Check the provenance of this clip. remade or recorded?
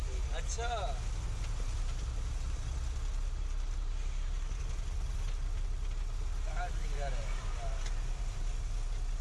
recorded